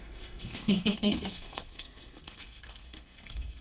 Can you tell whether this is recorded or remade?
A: remade